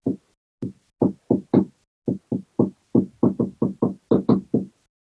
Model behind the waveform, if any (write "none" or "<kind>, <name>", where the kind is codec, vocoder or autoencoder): none